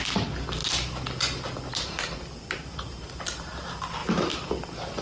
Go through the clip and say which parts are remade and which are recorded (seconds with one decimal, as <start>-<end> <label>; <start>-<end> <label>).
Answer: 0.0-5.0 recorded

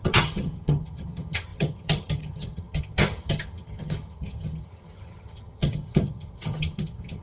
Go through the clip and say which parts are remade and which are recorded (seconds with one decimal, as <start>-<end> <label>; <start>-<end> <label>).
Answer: 0.0-7.2 remade

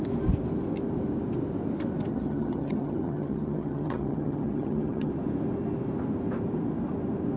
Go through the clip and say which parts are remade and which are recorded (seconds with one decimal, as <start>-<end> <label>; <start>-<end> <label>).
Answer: 0.0-2.1 recorded; 2.1-5.1 remade; 5.1-7.4 recorded